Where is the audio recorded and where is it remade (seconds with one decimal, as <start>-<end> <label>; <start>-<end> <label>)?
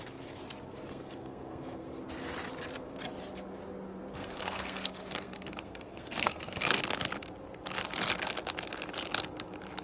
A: 0.0-0.9 recorded; 0.9-2.0 remade; 2.0-4.1 recorded; 4.1-6.8 remade; 6.8-9.8 recorded